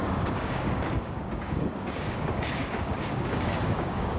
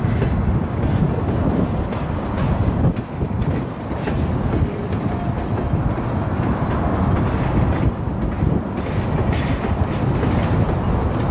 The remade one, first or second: first